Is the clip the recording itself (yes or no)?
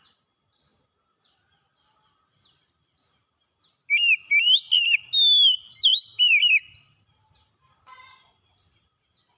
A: yes